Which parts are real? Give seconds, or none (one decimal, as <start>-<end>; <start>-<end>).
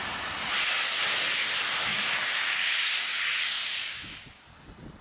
0.0-1.9; 3.2-3.8; 4.4-5.0